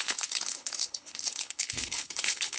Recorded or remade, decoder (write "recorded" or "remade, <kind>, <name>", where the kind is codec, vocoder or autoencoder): remade, codec, HILCodec